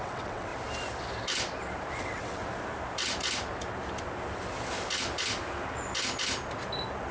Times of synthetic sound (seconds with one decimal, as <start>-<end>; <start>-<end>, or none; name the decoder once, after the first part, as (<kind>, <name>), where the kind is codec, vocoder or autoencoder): 0.0-0.5 (vocoder, WaveNeXt); 2.0-2.4